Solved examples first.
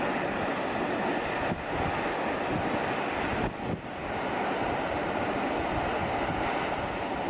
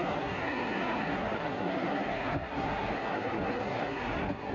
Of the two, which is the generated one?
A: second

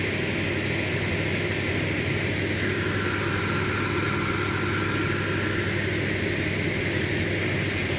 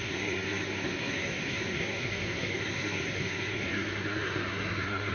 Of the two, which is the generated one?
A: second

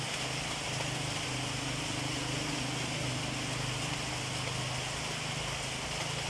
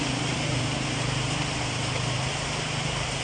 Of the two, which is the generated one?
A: second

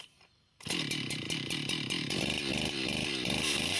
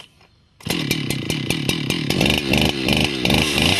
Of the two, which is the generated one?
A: first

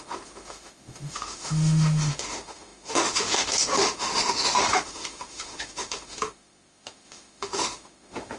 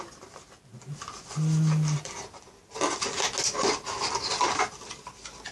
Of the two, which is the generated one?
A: first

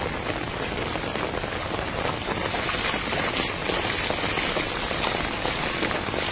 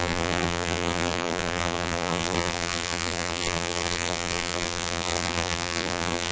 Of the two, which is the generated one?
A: second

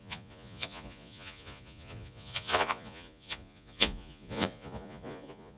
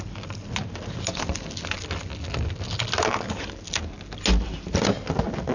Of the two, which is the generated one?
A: first